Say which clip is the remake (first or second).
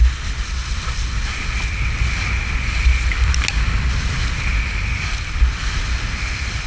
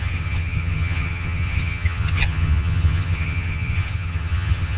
second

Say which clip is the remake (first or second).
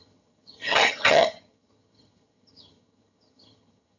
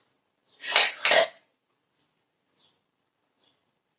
first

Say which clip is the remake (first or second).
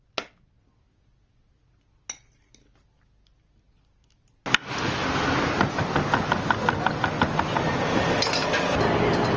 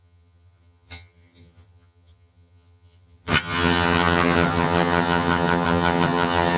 second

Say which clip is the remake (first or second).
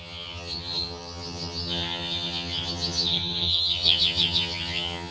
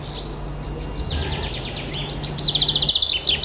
first